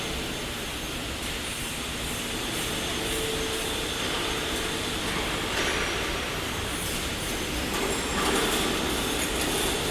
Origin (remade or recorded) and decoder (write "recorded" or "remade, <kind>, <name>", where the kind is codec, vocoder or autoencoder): recorded